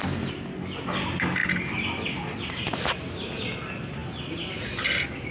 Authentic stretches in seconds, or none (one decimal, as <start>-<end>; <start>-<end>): 1.4-2.5; 4.0-4.8